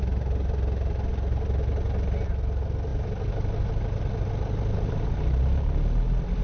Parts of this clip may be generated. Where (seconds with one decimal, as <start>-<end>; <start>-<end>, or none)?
none

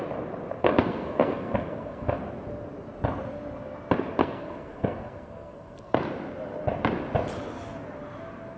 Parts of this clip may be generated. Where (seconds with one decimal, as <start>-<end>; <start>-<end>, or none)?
0.6-2.2; 4.2-6.0

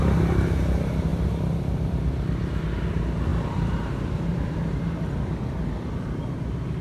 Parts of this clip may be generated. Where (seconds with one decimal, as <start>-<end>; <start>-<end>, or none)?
1.1-2.6; 3.3-6.8

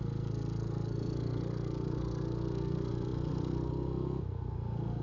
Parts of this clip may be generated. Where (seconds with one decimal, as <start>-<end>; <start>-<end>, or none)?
0.0-5.0